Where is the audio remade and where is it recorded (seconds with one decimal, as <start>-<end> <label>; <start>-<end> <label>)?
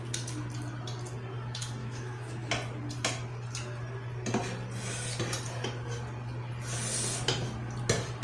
0.0-1.8 recorded; 1.8-2.5 remade; 2.5-8.2 recorded